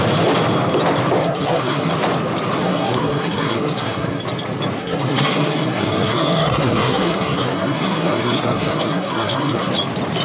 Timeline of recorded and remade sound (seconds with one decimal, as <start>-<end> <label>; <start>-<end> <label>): 0.0-1.2 recorded; 1.2-1.9 remade; 1.9-2.6 recorded; 2.6-4.2 remade; 4.2-4.8 recorded; 4.8-9.7 remade; 9.7-10.2 recorded